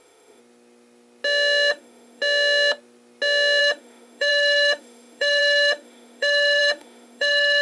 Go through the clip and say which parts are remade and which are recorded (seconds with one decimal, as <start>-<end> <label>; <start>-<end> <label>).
0.0-0.4 remade; 0.4-1.7 recorded; 1.7-2.2 remade; 2.2-3.6 recorded; 3.6-7.6 remade